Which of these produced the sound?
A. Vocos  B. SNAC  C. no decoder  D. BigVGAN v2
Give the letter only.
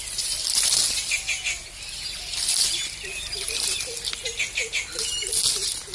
C